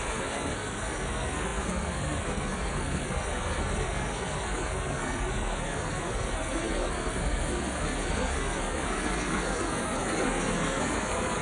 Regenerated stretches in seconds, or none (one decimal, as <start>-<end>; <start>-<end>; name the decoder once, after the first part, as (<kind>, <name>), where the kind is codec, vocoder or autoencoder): 0.0-11.4 (codec, SNAC)